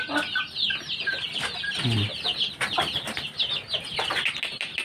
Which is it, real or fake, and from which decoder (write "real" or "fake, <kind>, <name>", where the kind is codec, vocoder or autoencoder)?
real